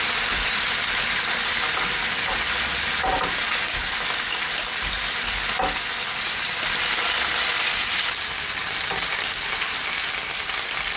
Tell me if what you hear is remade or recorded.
recorded